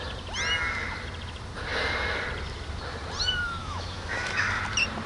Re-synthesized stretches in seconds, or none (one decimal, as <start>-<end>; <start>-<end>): 3.6-4.6

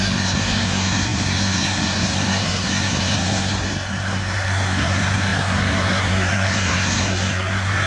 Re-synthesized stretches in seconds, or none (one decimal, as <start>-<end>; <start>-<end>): 0.0-7.9

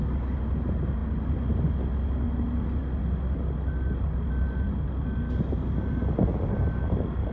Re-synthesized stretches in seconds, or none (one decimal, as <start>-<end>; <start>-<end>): none

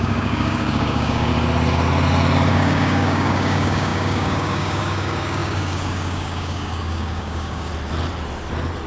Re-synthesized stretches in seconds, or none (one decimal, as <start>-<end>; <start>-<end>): 0.0-1.3; 2.5-7.7

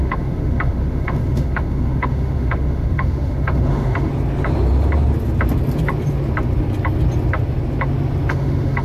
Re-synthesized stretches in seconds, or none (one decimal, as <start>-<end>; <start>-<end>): 0.0-4.1; 8.3-8.8

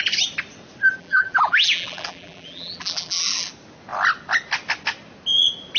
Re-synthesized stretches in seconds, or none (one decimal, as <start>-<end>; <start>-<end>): 1.0-3.5

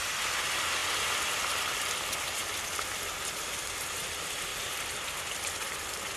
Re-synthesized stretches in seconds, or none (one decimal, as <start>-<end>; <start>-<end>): 0.0-4.5; 5.8-6.2

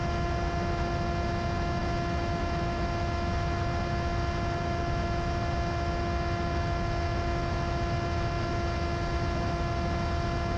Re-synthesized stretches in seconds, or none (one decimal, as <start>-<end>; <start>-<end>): none